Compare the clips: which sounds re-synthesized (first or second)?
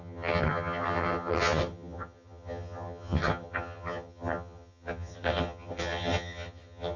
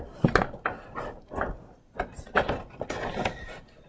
first